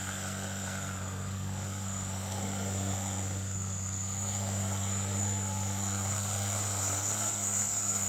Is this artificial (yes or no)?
yes